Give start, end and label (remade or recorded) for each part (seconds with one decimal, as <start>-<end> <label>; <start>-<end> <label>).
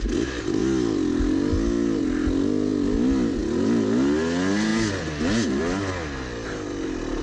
0.0-7.2 recorded